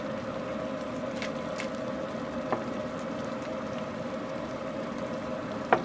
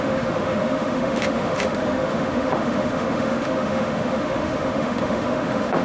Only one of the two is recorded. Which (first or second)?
first